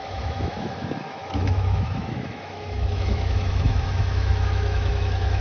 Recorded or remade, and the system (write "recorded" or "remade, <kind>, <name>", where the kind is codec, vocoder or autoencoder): remade, autoencoder, DAC-VAE